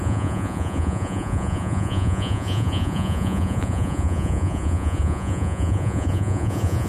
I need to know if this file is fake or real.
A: fake